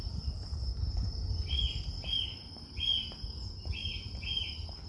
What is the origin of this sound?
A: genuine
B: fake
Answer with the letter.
A